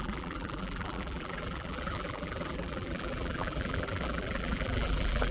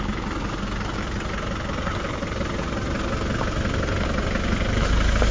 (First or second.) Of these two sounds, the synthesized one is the first